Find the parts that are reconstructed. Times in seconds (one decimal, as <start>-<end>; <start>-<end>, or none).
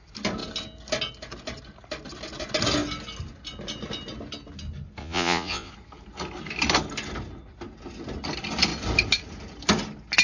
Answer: 5.0-5.7